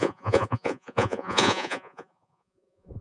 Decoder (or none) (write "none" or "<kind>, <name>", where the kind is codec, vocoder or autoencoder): vocoder, Vocos